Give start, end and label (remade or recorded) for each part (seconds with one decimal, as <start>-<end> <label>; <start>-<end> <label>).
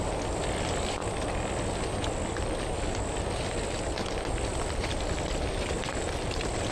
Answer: 0.0-6.7 recorded